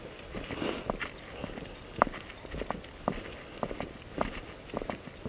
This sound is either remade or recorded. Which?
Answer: recorded